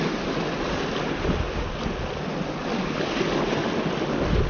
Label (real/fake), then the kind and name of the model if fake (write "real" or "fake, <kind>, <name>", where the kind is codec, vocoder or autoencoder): real